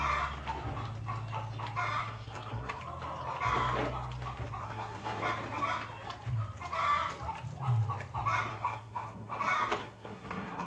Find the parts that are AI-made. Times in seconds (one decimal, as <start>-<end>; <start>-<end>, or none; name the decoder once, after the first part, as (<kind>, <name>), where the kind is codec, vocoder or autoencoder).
2.0-2.8 (codec, SNAC); 4.6-5.2; 8.5-9.4; 9.8-10.7